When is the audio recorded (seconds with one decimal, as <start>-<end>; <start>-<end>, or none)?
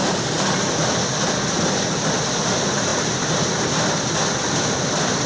none